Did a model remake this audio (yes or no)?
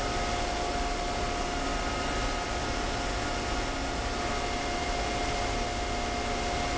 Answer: no